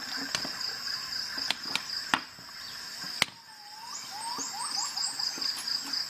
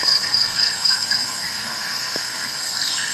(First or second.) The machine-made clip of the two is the second